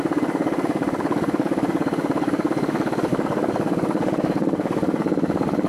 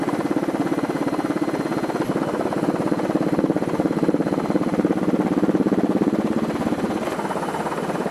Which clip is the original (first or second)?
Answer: second